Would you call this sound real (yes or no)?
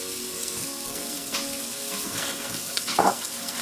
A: no